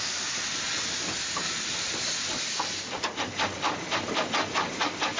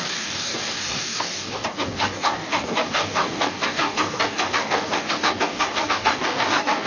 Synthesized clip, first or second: second